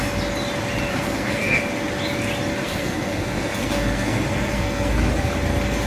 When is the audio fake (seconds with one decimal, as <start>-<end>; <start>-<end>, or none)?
0.9-1.6; 2.6-5.3